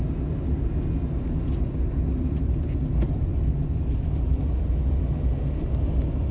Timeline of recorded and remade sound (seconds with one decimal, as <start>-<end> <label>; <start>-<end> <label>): 0.0-6.3 recorded